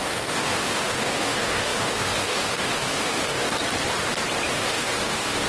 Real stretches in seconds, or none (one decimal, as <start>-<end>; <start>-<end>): 3.6-4.5